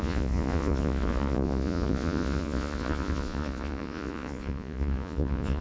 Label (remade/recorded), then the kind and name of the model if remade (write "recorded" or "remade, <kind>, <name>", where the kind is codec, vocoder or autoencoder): remade, vocoder, Vocos